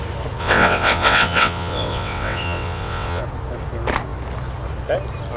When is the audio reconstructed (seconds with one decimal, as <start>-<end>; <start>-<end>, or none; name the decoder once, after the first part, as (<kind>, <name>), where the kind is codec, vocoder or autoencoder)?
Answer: 0.4-3.2 (vocoder, WaveNeXt)